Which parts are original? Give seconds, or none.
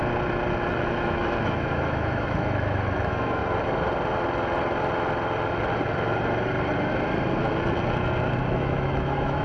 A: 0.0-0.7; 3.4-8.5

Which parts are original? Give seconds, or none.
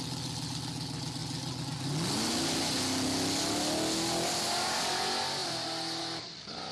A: 0.0-6.7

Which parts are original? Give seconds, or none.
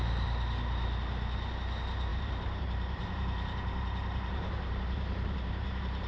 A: 0.0-2.1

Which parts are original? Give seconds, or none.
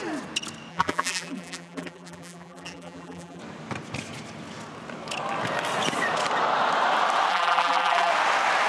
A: 0.0-0.7; 3.4-7.3; 8.1-8.7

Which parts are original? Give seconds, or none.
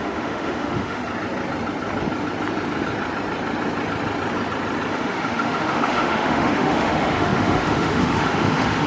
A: 1.0-4.9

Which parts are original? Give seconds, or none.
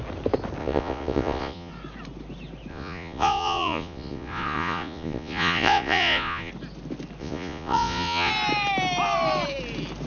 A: 0.0-0.6; 1.7-2.7; 6.5-7.2; 8.3-10.1